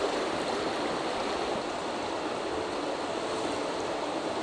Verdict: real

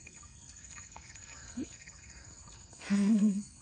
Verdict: fake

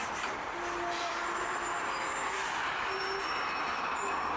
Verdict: real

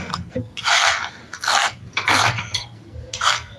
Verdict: fake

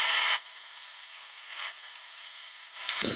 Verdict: fake